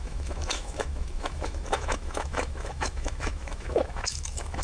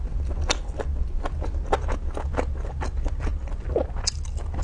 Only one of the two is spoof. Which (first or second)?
first